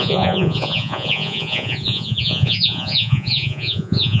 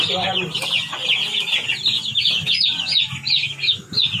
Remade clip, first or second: first